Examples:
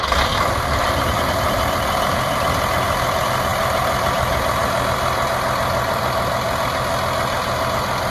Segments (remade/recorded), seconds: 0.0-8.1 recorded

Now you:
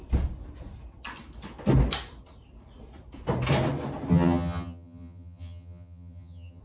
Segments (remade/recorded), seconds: 0.0-4.1 recorded; 4.1-6.6 remade

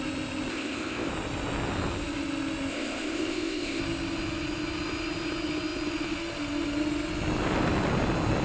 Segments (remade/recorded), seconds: 0.0-0.5 recorded; 0.5-1.1 remade; 1.1-2.7 recorded; 2.7-3.8 remade; 3.8-8.4 recorded

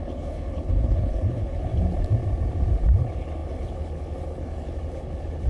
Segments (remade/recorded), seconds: 0.0-1.7 remade; 1.7-3.0 recorded; 3.0-5.5 remade

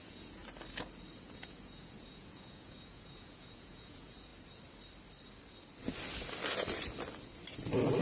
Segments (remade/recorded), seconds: 0.0-0.4 remade; 0.4-1.2 recorded; 1.2-4.3 remade; 4.3-8.0 recorded

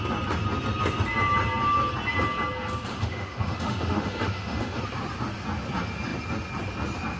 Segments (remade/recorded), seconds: 0.0-2.9 recorded; 2.9-4.8 remade; 4.8-7.2 recorded